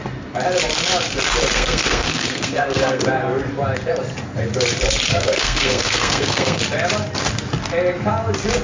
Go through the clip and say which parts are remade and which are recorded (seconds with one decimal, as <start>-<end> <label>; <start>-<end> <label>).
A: 0.0-1.5 recorded; 1.5-3.0 remade; 3.0-5.1 recorded; 5.1-6.6 remade; 6.6-8.6 recorded